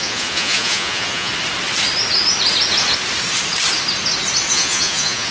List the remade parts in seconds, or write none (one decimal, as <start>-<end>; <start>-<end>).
0.0-1.3; 4.5-5.3